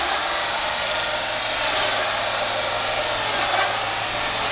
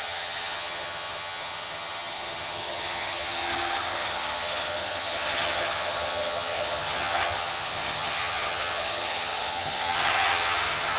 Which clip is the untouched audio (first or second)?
first